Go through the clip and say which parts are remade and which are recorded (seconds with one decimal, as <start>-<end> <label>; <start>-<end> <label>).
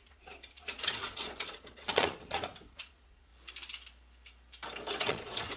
0.0-3.3 remade; 3.3-5.0 recorded; 5.0-5.6 remade